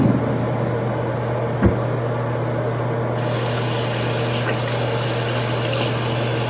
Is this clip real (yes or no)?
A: yes